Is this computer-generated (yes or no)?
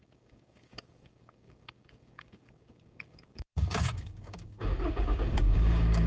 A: yes